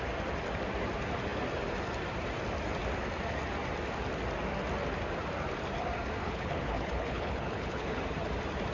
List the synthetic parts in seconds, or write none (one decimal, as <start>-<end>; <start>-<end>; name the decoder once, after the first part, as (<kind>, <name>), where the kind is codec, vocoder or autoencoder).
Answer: 6.2-8.0 (codec, HILCodec)